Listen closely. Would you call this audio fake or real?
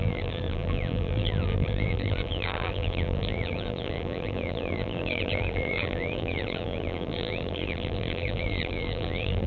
fake